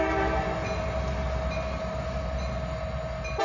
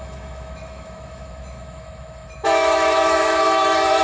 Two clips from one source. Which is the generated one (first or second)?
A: second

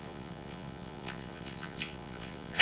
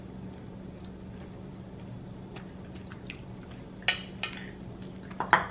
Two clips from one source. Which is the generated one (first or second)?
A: first